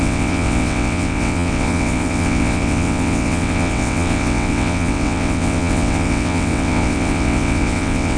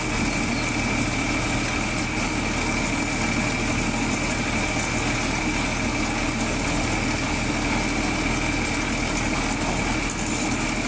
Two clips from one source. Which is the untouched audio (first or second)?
second